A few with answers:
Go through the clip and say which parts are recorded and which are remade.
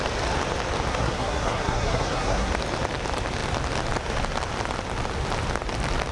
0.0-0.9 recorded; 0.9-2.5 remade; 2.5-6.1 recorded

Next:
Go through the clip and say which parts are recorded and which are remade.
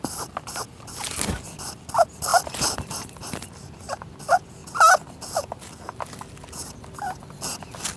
0.0-2.3 recorded; 2.3-2.8 remade; 2.8-4.6 recorded; 4.6-5.8 remade; 5.8-8.0 recorded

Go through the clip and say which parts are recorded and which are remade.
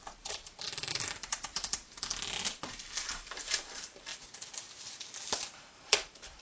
0.0-2.1 remade; 2.1-2.6 recorded; 2.6-4.1 remade; 4.1-5.0 recorded; 5.0-6.4 remade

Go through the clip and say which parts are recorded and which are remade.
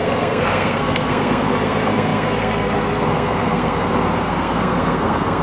0.0-5.4 remade